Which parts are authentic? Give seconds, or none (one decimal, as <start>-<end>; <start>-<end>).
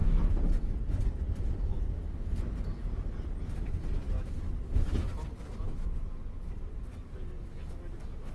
0.6-8.3